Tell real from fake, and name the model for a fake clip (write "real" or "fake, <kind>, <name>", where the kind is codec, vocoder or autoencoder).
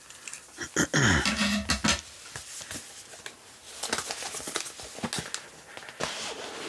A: real